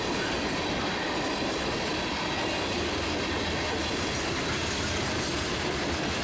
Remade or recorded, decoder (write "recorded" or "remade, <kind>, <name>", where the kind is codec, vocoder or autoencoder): recorded